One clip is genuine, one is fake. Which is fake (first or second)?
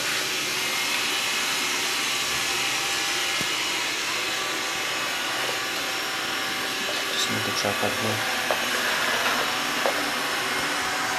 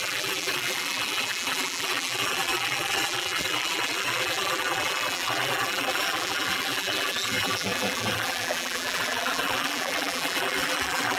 second